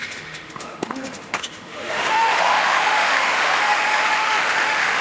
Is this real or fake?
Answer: fake